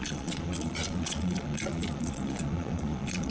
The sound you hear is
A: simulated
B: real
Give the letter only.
A